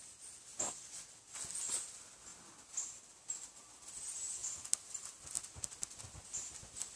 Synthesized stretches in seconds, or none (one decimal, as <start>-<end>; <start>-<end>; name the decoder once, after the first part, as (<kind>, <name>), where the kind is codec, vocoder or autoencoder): none